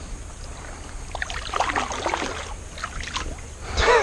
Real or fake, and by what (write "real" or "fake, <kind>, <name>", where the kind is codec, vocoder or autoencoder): real